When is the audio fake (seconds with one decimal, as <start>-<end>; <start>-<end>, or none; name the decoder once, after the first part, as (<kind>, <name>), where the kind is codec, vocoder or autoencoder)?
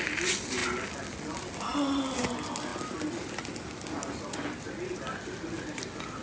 none